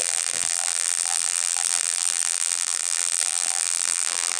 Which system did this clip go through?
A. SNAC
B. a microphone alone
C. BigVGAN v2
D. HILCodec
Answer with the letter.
C